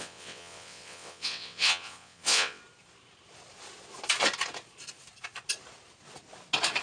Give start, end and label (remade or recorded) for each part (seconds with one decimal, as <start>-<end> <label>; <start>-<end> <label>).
0.0-2.6 remade; 2.6-6.8 recorded